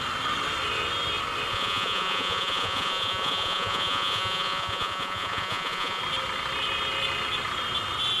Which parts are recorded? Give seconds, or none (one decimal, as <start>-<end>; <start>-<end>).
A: 0.0-1.5; 6.0-8.2